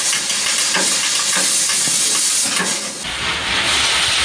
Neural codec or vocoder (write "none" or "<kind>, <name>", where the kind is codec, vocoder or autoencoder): none